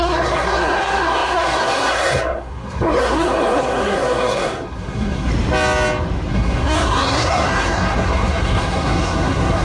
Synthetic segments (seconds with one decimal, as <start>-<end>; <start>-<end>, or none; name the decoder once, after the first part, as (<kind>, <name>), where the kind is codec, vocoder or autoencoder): 0.0-5.3 (codec, SNAC); 6.3-9.6